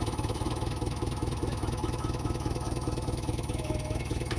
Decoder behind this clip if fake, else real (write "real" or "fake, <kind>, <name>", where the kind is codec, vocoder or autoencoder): fake, autoencoder, DAC-VAE